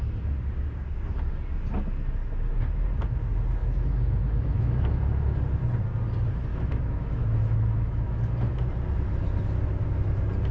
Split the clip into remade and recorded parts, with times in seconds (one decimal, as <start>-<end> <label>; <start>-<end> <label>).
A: 0.0-3.6 recorded; 3.6-4.8 remade; 4.8-6.5 recorded; 6.5-8.6 remade; 8.6-10.5 recorded